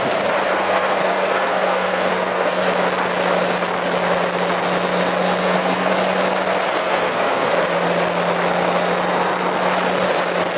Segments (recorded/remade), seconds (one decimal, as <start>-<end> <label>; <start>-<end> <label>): 0.0-0.5 recorded; 0.5-2.6 remade; 2.6-5.4 recorded; 5.4-5.9 remade; 5.9-6.8 recorded; 6.8-7.5 remade; 7.5-10.6 recorded